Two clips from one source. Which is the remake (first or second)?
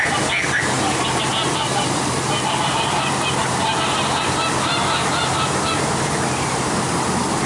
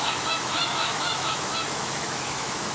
second